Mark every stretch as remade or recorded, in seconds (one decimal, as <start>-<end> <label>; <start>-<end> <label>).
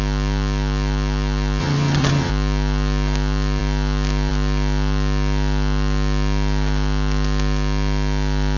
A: 0.0-1.6 recorded; 1.6-2.3 remade; 2.3-8.6 recorded